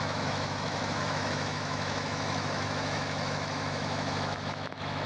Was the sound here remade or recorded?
remade